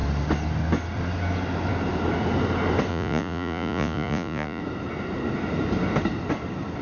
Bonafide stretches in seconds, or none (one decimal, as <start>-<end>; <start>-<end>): 0.0-2.9; 4.6-6.8

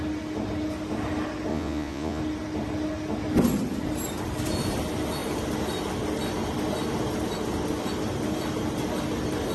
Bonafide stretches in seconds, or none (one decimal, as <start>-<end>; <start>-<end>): 0.0-1.5; 2.2-9.5

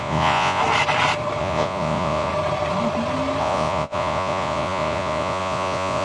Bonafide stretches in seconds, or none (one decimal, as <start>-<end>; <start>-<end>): 0.6-1.4; 2.3-3.4